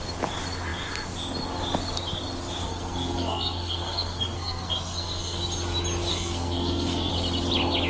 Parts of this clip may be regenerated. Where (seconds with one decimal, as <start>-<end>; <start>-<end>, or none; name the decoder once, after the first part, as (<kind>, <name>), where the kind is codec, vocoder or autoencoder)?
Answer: 2.6-5.4 (codec, SNAC); 6.1-7.1